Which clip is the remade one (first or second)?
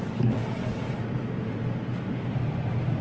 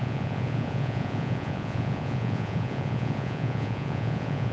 second